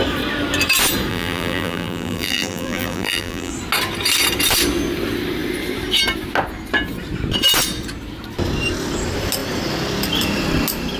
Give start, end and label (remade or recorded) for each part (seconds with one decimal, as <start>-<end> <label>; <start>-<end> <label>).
0.0-1.1 recorded; 1.1-3.5 remade; 3.5-11.0 recorded